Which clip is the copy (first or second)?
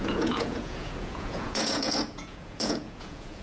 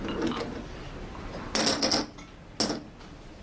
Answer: first